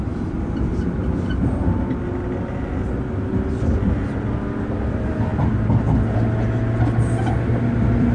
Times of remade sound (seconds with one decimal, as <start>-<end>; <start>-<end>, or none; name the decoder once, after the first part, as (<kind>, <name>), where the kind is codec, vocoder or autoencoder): 0.0-0.7 (vocoder, BigVGAN v2); 4.8-5.3; 7.5-8.1